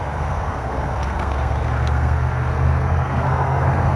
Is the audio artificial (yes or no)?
yes